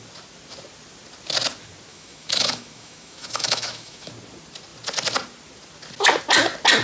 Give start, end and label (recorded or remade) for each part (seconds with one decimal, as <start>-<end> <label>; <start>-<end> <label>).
0.0-1.9 recorded; 1.9-4.1 remade; 4.1-6.8 recorded